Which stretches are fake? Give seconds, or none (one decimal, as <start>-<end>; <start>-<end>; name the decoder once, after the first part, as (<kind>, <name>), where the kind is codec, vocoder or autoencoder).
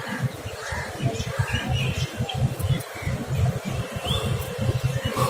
none